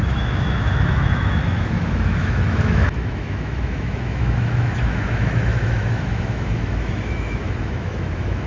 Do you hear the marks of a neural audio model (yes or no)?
yes